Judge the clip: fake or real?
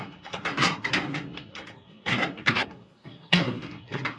fake